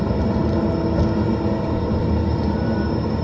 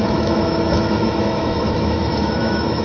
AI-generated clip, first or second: second